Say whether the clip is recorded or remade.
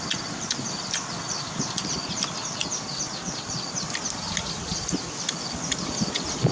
recorded